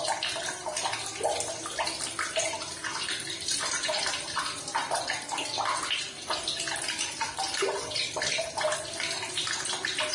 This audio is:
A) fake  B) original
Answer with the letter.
B